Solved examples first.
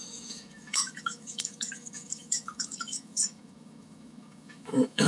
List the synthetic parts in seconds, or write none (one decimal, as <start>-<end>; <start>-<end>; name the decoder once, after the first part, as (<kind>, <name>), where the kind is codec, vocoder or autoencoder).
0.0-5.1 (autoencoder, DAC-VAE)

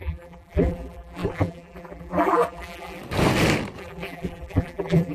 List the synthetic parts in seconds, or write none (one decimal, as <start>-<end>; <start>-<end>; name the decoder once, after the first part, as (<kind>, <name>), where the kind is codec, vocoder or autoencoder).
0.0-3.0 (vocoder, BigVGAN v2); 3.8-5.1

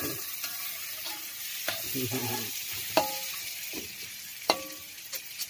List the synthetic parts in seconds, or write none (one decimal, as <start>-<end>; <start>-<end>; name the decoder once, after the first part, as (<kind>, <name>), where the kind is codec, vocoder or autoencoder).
2.2-3.8 (vocoder, BigVGAN v2)

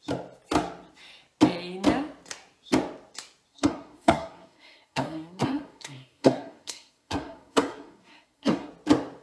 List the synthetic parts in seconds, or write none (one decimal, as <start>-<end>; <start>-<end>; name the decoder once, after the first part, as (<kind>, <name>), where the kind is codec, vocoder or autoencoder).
3.5-8.7 (codec, SNAC)

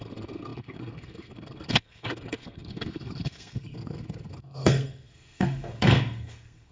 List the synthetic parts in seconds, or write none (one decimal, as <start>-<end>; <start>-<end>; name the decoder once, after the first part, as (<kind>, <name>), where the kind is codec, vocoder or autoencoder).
0.0-6.7 (codec, SNAC)

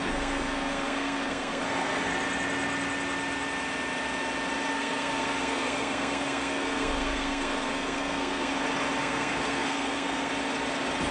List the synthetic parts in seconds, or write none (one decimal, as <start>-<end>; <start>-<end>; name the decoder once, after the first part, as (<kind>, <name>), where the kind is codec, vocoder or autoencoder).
0.0-2.1 (codec, SNAC); 4.7-8.5; 9.0-10.3

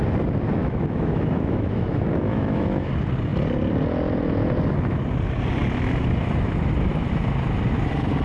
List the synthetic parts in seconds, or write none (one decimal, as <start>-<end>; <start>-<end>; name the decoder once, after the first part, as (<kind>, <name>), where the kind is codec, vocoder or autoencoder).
0.6-2.9 (autoencoder, DAC-VAE)

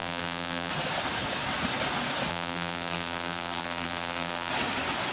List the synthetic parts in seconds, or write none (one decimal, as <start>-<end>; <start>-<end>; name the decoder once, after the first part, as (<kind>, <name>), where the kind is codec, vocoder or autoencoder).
0.0-0.7 (vocoder, BigVGAN v2); 2.3-4.5